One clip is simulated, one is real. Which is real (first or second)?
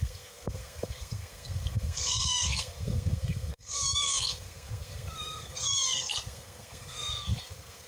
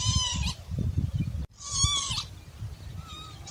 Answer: second